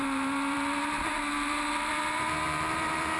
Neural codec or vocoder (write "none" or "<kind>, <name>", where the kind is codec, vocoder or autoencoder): vocoder, BigVGAN v2